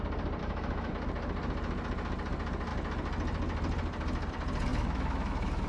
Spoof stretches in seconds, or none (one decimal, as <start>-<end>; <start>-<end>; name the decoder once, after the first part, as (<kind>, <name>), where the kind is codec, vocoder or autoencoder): 0.4-0.9 (autoencoder, DAC-VAE); 4.7-5.7